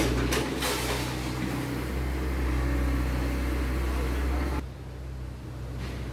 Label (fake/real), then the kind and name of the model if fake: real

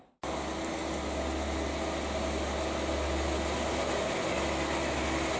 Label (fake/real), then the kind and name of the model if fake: real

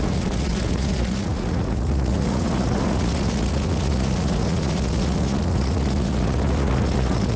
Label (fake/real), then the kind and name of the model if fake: fake, vocoder, Vocos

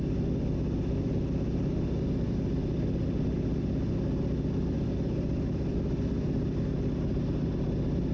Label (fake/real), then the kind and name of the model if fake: real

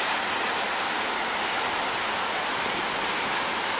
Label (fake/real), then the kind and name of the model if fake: real